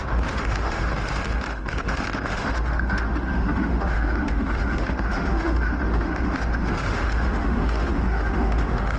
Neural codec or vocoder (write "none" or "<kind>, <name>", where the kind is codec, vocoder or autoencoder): autoencoder, DAC-VAE